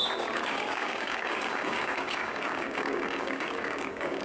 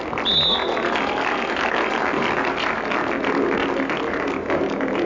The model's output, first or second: first